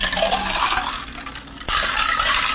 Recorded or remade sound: recorded